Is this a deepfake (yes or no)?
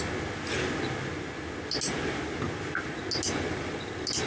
no